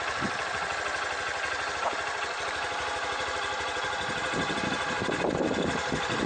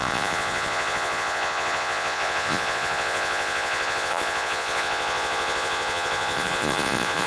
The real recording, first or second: first